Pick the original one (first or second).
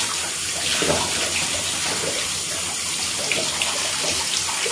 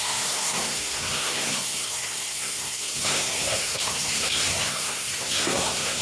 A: first